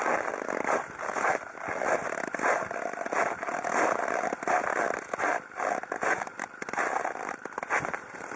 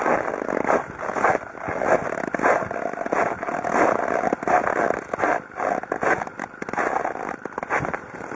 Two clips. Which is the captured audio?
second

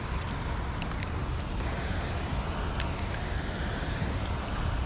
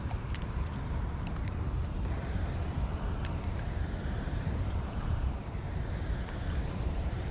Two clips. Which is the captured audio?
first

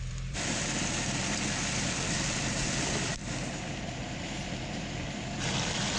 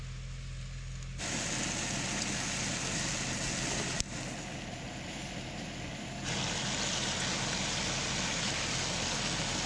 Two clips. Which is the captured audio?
second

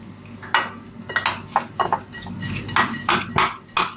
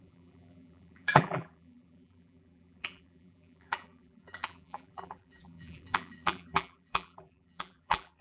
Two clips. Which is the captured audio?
first